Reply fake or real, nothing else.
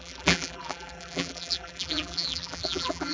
fake